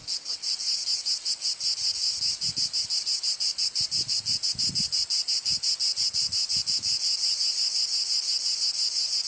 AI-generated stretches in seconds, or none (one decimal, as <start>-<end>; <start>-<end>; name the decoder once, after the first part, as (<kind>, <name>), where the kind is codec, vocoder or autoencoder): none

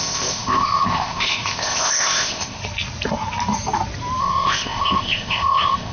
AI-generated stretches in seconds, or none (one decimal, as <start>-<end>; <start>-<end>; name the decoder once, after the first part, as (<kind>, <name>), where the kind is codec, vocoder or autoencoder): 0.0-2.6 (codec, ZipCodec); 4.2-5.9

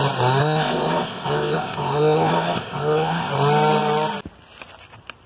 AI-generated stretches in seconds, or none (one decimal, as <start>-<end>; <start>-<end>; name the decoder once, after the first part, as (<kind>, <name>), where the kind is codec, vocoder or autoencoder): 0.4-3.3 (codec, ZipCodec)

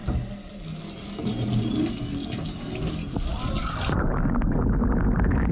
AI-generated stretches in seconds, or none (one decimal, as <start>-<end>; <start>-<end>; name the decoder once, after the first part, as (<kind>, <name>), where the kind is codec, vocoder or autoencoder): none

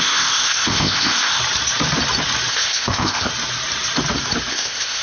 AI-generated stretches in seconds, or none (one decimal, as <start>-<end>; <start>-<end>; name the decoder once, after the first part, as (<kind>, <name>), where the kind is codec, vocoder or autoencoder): 0.0-1.4 (codec, ZipCodec); 2.5-3.3; 4.5-5.0

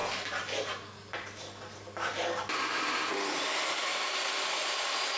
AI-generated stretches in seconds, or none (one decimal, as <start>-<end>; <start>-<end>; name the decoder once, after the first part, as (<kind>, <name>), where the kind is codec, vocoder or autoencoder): none

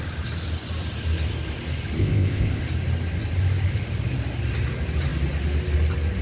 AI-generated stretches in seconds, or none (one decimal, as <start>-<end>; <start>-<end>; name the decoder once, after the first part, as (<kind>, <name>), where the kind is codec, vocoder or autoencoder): 2.0-2.6 (codec, ZipCodec)